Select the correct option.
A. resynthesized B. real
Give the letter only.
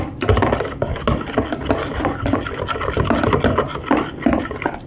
B